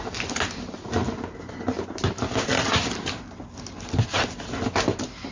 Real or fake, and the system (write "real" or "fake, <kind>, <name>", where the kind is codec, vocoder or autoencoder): real